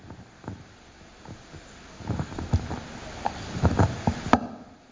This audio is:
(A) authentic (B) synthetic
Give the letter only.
A